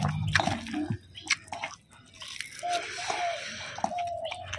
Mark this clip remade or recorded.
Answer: recorded